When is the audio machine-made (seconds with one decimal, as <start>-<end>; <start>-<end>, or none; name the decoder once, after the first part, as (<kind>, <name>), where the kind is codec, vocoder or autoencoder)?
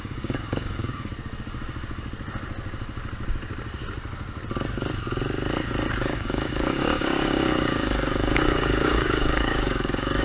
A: 0.0-1.1 (codec, DAC); 6.0-10.2